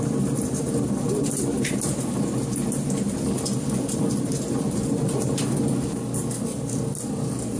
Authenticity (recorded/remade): recorded